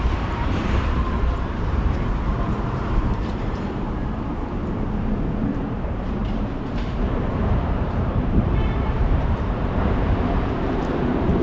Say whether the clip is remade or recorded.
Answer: remade